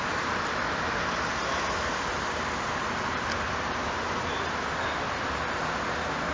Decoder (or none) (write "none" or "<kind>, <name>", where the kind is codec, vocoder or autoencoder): none